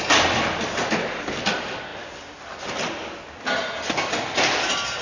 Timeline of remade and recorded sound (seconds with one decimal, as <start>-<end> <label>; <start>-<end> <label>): 0.0-5.0 recorded